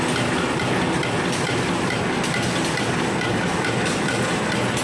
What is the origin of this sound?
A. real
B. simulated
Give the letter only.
A